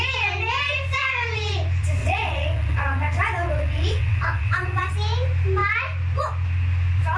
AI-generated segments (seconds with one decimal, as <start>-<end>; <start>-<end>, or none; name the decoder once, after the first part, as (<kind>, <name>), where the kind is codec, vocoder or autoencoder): 2.0-4.9 (vocoder, WaveNeXt)